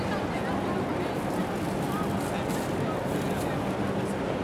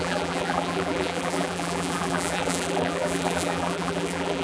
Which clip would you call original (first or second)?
first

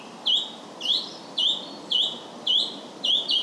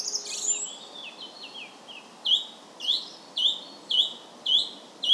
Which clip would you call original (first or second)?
second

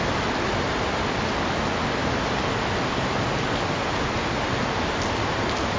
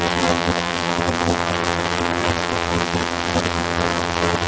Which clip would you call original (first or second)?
first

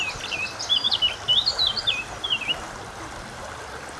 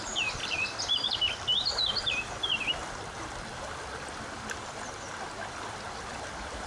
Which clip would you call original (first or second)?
first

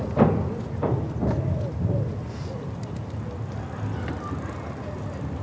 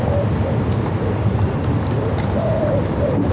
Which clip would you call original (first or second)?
first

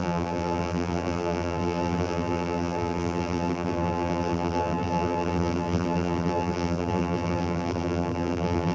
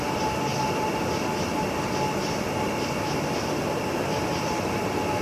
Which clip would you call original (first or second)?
second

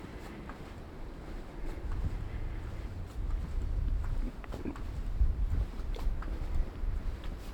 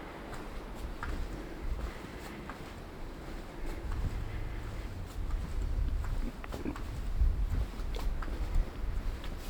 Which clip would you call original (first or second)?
second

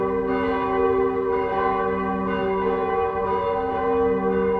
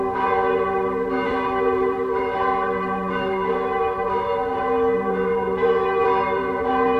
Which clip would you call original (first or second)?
first